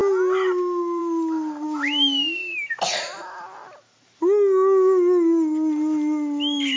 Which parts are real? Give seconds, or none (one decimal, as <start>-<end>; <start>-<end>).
0.0-6.8